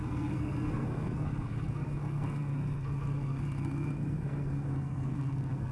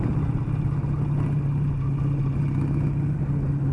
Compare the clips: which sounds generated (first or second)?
first